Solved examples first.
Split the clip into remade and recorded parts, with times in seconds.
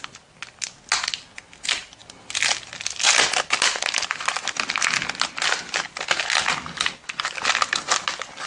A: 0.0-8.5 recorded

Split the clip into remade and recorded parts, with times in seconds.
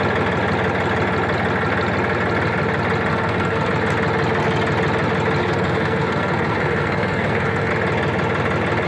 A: 0.0-3.1 recorded; 3.1-3.7 remade; 3.7-5.4 recorded; 5.4-7.7 remade; 7.7-8.9 recorded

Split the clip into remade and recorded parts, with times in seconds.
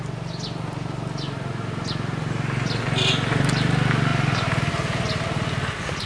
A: 0.0-6.1 recorded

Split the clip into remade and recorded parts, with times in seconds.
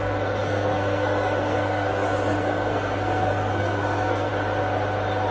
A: 0.0-4.3 remade; 4.3-5.3 recorded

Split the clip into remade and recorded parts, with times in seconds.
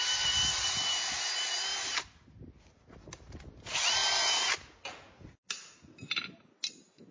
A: 0.0-7.1 recorded